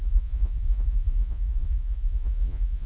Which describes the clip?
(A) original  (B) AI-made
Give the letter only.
B